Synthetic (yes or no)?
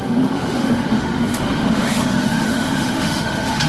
yes